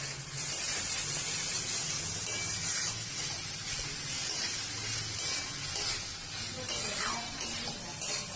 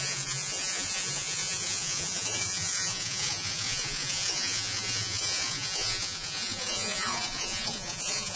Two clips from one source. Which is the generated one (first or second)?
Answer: second